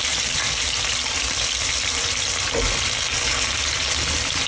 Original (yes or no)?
yes